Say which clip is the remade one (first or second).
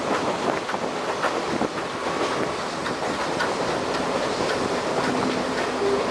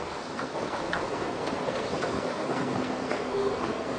second